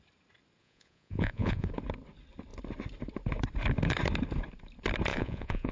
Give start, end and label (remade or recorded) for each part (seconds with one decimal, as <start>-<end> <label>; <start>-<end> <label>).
0.0-0.6 recorded; 0.6-1.7 remade; 1.7-5.1 recorded; 5.1-5.7 remade